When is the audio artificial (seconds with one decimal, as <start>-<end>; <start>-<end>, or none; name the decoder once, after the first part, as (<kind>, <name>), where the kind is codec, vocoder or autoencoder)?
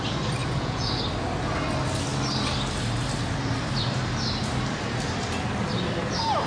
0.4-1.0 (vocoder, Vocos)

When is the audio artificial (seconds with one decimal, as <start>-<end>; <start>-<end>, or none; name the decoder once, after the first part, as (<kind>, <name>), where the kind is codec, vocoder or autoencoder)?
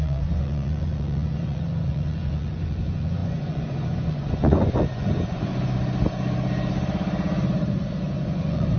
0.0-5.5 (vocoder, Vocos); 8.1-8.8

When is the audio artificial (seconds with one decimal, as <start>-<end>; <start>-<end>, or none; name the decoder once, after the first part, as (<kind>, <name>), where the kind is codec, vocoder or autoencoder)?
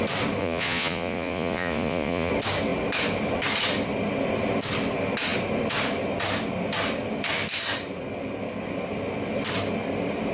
0.4-2.3 (vocoder, Vocos)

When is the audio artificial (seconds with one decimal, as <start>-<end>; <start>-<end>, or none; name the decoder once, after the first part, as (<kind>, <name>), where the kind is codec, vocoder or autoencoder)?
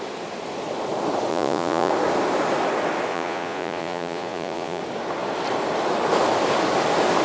1.3-1.9 (vocoder, Vocos); 3.1-4.8